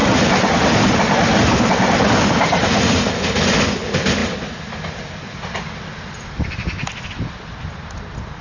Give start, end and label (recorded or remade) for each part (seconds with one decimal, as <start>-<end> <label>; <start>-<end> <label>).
0.0-8.4 recorded